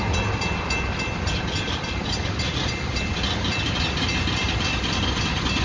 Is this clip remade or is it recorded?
recorded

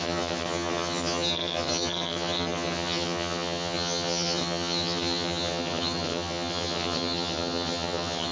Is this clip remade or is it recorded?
remade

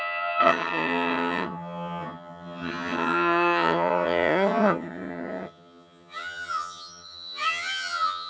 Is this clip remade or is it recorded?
remade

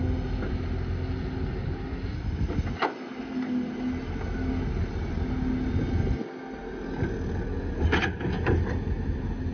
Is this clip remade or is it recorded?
recorded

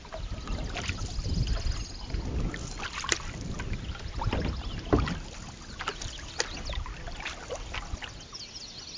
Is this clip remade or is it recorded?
recorded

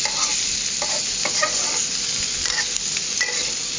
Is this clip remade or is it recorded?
recorded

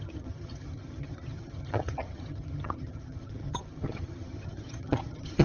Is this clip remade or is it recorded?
remade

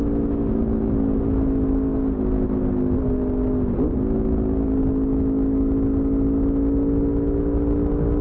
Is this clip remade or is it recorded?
recorded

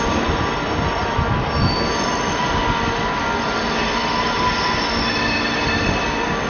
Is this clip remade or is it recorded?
recorded